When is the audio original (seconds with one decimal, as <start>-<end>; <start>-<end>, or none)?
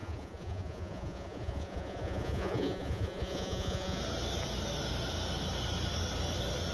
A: 4.0-6.7